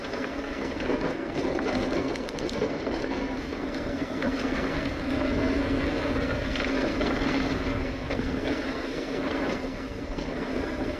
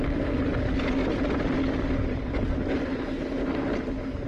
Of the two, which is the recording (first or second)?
second